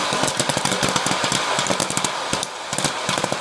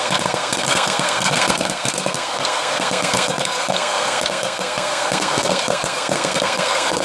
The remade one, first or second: second